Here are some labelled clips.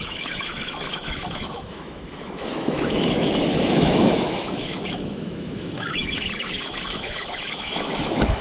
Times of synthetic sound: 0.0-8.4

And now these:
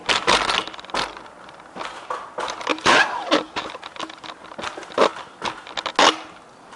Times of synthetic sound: 2.7-3.7

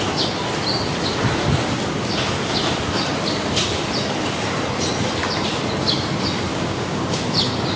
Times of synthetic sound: 6.5-7.2

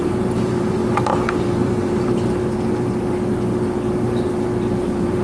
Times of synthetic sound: 0.0-0.8; 1.4-2.4; 4.8-5.2